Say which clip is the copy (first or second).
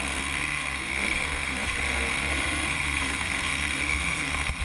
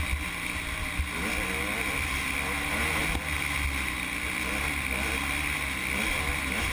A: first